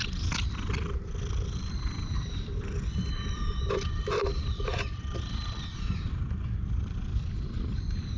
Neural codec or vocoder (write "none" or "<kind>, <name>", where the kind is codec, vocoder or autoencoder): vocoder, BigVGAN v2